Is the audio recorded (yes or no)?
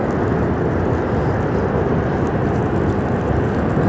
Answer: yes